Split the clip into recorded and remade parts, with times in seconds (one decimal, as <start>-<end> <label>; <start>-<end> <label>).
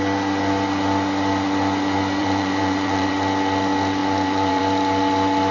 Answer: 0.0-2.2 recorded; 2.2-3.1 remade; 3.1-4.0 recorded; 4.0-4.6 remade; 4.6-5.5 recorded